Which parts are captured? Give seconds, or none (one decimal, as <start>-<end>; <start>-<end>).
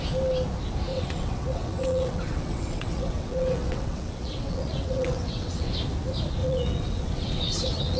0.0-0.9; 5.7-6.4